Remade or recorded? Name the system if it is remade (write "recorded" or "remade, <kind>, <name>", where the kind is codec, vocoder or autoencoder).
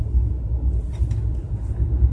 recorded